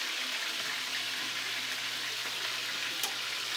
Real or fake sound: real